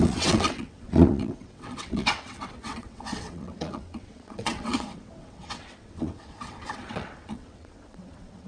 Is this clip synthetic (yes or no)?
yes